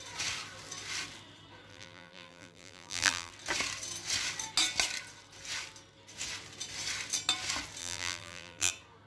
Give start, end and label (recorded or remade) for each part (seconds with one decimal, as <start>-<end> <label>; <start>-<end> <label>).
0.0-1.7 recorded; 1.7-3.3 remade; 3.3-7.8 recorded; 7.8-8.7 remade; 8.7-9.1 recorded